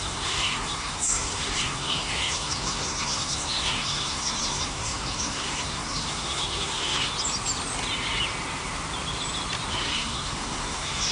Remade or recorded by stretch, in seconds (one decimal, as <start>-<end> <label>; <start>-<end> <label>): 0.0-7.1 remade; 7.1-9.7 recorded; 9.7-11.1 remade

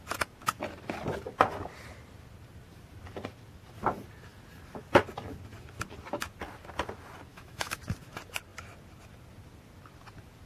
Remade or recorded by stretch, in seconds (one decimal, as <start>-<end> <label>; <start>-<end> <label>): 0.0-7.3 recorded; 7.3-7.8 remade; 7.8-10.5 recorded

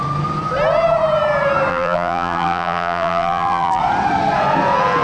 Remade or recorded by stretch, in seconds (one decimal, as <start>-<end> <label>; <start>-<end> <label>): 0.0-1.7 recorded; 1.7-3.8 remade; 3.8-5.0 recorded

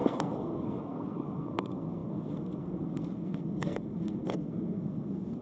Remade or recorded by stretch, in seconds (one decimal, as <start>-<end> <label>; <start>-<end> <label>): 0.0-5.4 remade

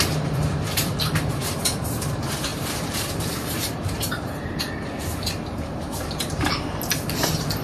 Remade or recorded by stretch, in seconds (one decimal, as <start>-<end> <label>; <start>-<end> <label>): 0.0-7.6 remade

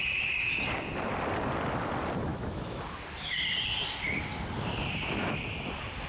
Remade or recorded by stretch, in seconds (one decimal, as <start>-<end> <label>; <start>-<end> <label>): 0.0-2.3 recorded; 2.3-2.8 remade; 2.8-6.1 recorded